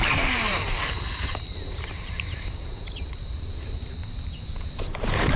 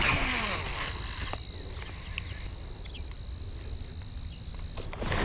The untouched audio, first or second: second